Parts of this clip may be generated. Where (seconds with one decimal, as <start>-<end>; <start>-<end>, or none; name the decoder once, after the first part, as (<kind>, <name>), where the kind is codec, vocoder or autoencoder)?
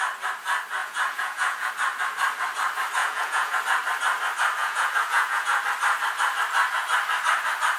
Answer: 0.8-1.7 (vocoder, Vocos); 3.0-3.6; 4.6-5.6